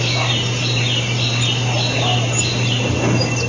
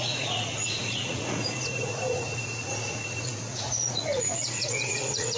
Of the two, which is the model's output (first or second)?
second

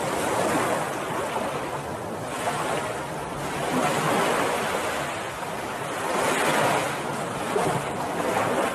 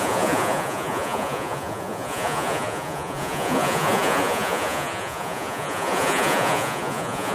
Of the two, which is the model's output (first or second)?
second